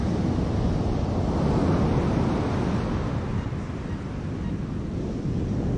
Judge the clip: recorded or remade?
recorded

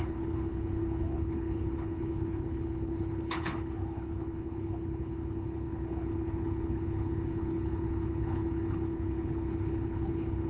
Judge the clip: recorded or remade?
remade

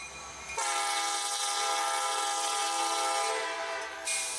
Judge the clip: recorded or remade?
recorded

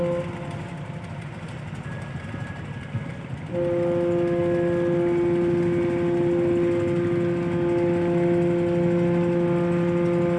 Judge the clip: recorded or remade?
recorded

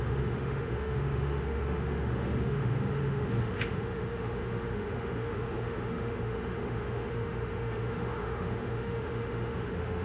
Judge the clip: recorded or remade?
remade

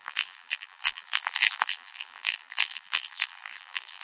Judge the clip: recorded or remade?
remade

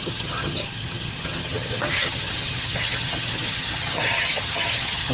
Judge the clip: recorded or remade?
remade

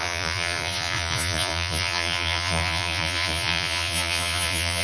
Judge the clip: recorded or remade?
remade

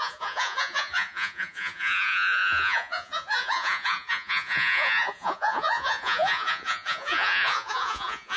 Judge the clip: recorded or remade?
remade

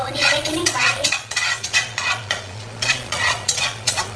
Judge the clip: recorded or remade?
remade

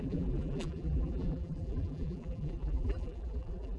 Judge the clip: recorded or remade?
remade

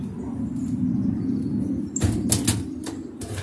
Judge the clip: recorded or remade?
recorded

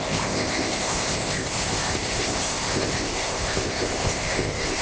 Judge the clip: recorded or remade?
remade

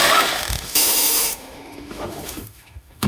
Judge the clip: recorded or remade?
remade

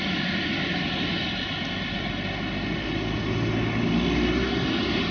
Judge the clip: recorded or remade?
recorded